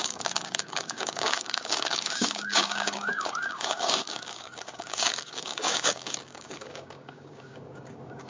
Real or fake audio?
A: fake